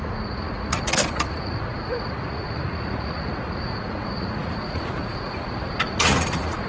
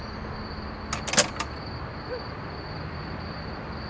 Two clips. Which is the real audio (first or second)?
second